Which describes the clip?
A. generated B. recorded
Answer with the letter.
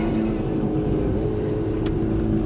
A